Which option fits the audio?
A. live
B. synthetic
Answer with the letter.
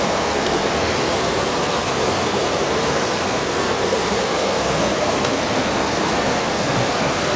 B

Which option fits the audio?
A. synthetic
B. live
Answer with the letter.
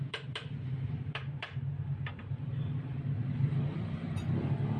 A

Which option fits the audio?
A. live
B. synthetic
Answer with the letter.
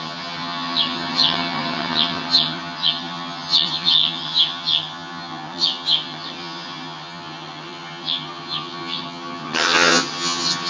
B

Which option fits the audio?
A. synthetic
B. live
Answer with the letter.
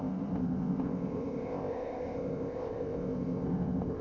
A